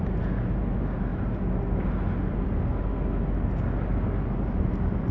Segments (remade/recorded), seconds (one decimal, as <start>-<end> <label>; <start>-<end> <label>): 0.0-5.1 recorded